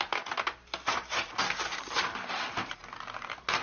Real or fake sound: real